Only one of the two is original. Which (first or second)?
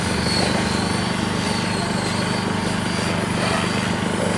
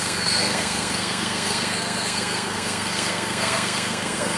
first